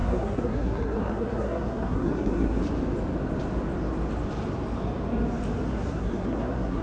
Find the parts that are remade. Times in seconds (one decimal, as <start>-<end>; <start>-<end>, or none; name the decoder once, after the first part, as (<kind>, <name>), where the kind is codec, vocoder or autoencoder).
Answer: 0.0-2.6 (codec, SNAC); 5.7-6.8